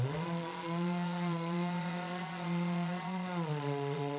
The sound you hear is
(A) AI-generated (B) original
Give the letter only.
A